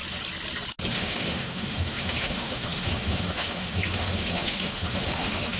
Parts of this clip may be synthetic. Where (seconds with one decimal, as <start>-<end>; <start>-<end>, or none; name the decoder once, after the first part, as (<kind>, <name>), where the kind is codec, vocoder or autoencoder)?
0.9-5.6 (autoencoder, DAC-VAE)